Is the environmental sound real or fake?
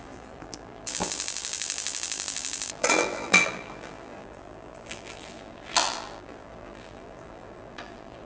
fake